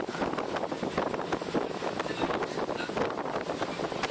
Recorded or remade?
recorded